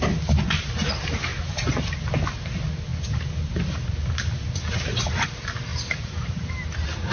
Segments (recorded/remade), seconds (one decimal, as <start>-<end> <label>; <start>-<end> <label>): 0.0-1.3 recorded; 1.3-2.0 remade; 2.0-2.9 recorded; 2.9-3.9 remade; 3.9-5.7 recorded; 5.7-6.5 remade; 6.5-7.1 recorded